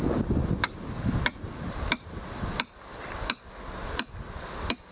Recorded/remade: recorded